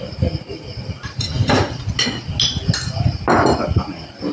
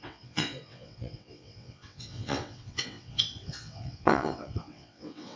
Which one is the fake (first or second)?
second